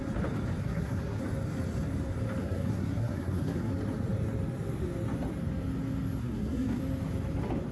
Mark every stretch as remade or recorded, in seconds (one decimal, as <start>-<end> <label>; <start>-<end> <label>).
0.0-0.6 recorded; 0.6-1.2 remade; 1.2-2.4 recorded; 2.4-3.7 remade; 3.7-6.2 recorded; 6.2-6.8 remade; 6.8-7.7 recorded